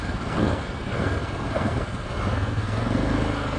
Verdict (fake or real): fake